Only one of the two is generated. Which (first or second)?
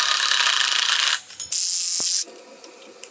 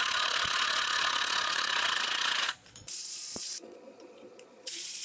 second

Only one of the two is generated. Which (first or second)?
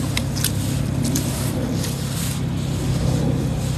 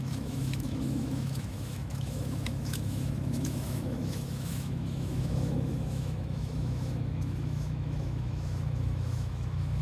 second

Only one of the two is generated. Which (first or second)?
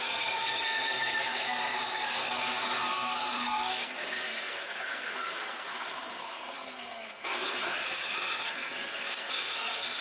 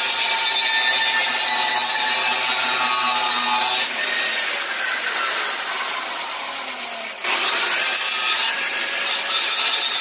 first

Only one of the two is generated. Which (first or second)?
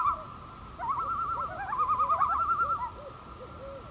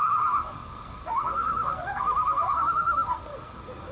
second